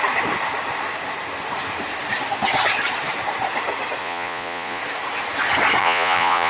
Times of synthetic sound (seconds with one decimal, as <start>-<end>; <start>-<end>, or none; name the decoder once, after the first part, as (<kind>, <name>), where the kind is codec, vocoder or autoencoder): 4.0-4.8 (vocoder, Vocos); 5.8-6.5